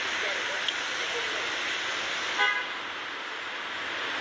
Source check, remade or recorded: recorded